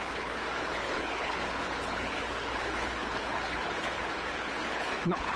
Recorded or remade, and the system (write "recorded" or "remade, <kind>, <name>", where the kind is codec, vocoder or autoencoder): remade, codec, HILCodec